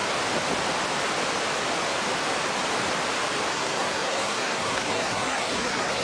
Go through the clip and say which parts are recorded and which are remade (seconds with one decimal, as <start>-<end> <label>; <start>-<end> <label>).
0.0-3.5 recorded; 3.5-6.0 remade

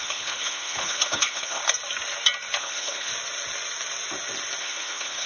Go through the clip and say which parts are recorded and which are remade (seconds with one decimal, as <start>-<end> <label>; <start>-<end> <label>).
0.0-1.6 remade; 1.6-2.6 recorded; 2.6-3.1 remade; 3.1-4.6 recorded; 4.6-5.3 remade

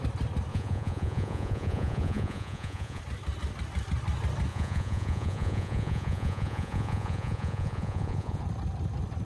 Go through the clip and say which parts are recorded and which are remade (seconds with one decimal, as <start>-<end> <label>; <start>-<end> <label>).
0.0-0.5 recorded; 0.5-3.0 remade; 3.0-4.5 recorded; 4.5-8.4 remade; 8.4-9.3 recorded

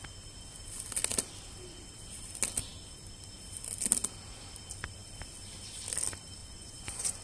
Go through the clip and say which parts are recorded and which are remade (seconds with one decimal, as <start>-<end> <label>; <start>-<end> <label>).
0.0-6.4 recorded; 6.4-7.2 remade

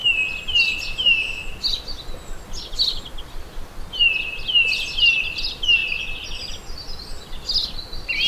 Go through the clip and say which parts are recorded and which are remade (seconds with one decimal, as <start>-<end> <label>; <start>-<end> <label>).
0.0-8.3 recorded

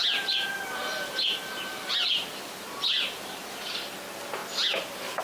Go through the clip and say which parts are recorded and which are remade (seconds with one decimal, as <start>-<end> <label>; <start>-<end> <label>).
0.0-0.8 recorded; 0.8-3.9 remade; 3.9-5.2 recorded

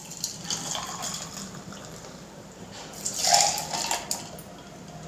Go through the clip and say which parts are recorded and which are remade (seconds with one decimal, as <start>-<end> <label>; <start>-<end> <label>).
0.0-3.1 remade; 3.1-5.1 recorded

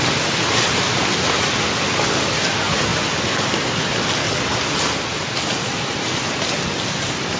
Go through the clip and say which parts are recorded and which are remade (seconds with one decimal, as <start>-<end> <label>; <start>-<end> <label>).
0.0-7.4 recorded